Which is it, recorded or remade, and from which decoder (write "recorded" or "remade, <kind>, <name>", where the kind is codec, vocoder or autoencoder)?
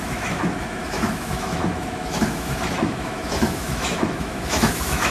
remade, autoencoder, DAC-VAE